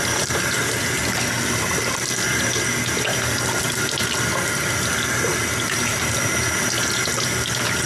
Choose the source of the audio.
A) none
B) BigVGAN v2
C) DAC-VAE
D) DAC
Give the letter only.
A